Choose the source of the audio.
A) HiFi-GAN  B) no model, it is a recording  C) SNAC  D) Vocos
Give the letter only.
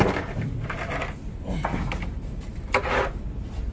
B